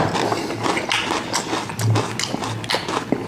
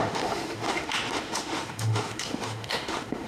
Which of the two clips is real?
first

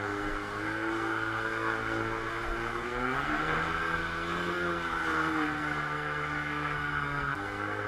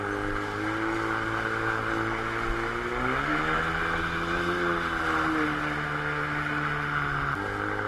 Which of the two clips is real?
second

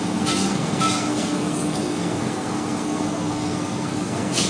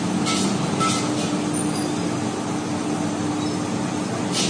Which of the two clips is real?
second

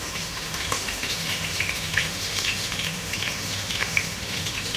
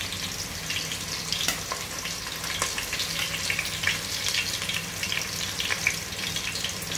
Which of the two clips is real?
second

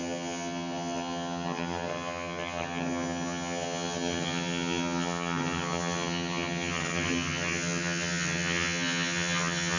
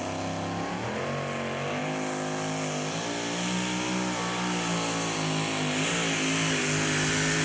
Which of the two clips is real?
second